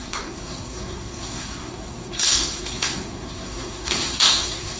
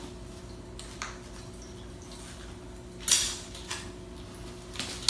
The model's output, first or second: first